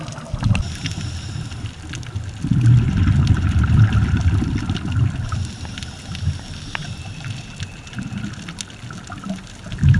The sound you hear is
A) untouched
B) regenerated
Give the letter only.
A